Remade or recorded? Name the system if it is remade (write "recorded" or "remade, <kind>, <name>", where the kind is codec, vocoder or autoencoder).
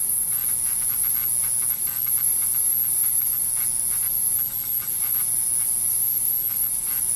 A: recorded